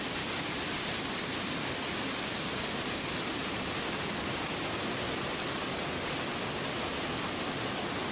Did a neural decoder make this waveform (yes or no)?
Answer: no